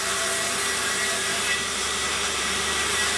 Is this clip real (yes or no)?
no